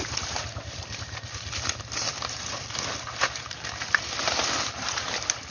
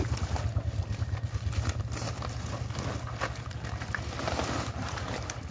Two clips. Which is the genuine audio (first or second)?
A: second